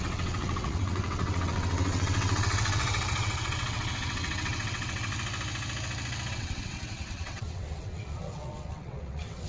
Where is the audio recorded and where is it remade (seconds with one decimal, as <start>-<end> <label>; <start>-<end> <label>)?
0.0-5.1 remade; 5.1-6.3 recorded; 6.3-9.5 remade